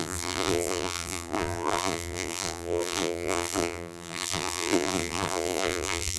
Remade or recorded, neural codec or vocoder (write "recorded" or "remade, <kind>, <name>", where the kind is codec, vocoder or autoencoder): remade, vocoder, BigVGAN v2